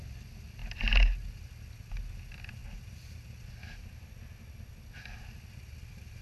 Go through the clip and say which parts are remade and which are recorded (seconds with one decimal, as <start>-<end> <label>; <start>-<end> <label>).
0.0-6.2 recorded